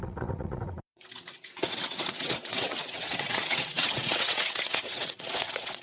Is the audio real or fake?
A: fake